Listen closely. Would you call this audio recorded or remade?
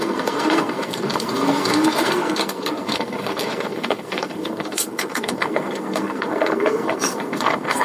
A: remade